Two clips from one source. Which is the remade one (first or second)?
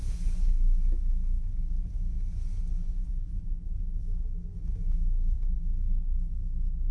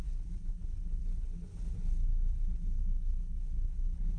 second